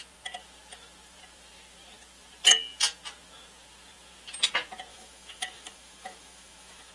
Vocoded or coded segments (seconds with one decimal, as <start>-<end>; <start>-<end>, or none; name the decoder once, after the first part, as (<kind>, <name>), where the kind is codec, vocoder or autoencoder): 4.9-6.9 (autoencoder, DAC-VAE)